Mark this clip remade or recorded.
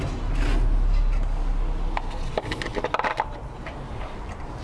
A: recorded